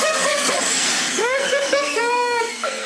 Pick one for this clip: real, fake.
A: fake